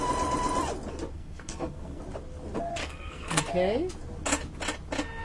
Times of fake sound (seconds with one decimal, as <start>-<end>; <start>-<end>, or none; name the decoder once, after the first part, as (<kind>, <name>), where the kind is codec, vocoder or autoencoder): 1.1-2.0 (codec, SNAC); 2.7-3.4